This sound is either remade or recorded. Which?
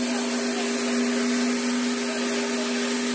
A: recorded